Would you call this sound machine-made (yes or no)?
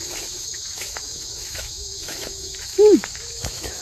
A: yes